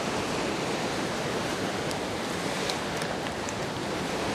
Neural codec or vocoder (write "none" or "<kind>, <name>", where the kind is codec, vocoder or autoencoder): none